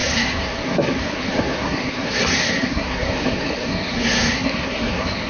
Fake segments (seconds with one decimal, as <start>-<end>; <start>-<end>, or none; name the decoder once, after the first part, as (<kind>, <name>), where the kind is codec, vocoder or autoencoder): 0.0-5.3 (codec, SNAC)